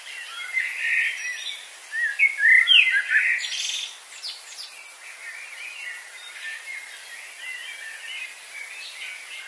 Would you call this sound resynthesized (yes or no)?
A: no